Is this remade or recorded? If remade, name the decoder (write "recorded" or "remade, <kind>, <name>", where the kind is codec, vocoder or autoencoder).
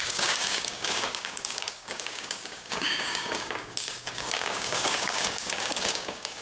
remade, codec, DAC